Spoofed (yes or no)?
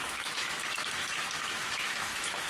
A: yes